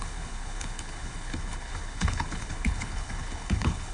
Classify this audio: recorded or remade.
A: remade